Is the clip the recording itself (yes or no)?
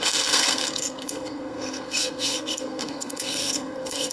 no